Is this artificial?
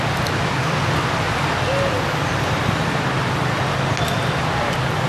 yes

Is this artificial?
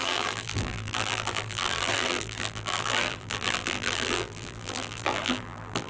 yes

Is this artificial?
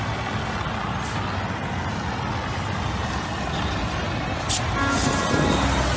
no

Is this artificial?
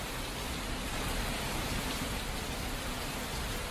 no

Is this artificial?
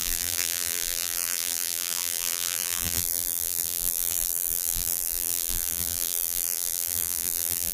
yes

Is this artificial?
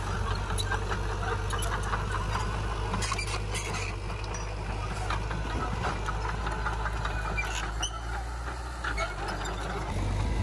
no